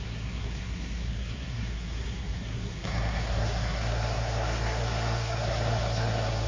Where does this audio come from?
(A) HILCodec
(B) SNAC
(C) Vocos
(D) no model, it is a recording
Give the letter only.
B